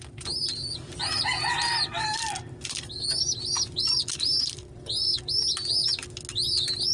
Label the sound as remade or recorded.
recorded